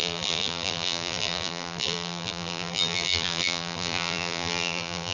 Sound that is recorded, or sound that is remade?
remade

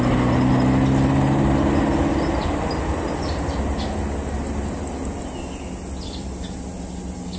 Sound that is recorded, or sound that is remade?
recorded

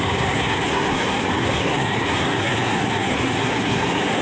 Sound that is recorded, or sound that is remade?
remade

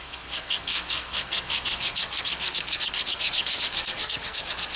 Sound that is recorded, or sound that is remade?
remade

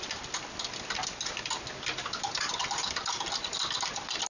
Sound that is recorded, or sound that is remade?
recorded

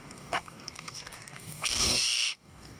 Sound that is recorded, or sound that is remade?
remade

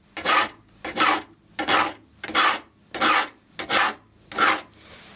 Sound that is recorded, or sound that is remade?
recorded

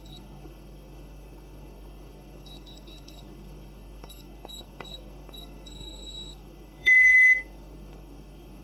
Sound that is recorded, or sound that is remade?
remade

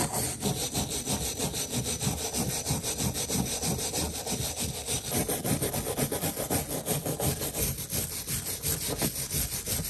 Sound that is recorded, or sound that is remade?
recorded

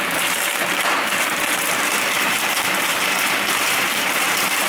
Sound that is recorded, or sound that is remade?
remade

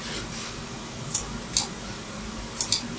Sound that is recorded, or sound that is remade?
recorded